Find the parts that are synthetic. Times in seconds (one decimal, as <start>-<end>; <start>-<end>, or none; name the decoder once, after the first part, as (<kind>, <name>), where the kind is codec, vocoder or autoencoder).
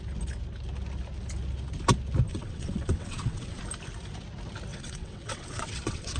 2.3-3.6 (vocoder, WaveNeXt); 4.7-6.2